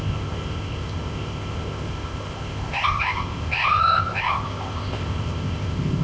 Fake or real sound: fake